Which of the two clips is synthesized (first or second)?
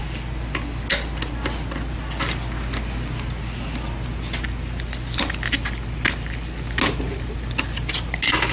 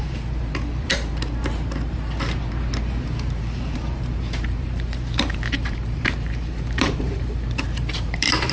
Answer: second